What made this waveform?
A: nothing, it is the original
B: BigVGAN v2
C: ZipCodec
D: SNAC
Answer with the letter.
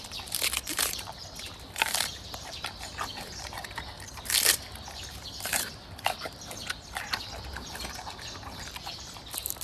B